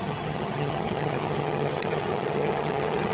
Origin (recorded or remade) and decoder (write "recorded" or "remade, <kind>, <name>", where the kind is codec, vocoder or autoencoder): remade, vocoder, HiFi-GAN